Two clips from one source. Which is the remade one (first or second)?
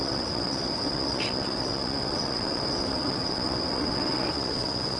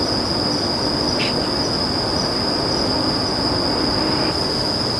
first